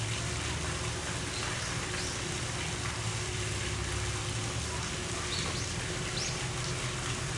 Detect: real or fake real